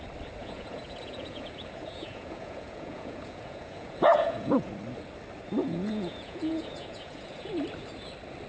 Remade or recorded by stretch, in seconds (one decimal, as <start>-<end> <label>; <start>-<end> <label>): 0.0-0.4 recorded; 0.4-4.7 remade; 4.7-5.6 recorded; 5.6-7.5 remade; 7.5-8.5 recorded

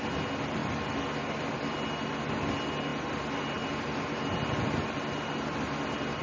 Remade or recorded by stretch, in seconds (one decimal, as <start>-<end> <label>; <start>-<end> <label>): 0.0-6.2 recorded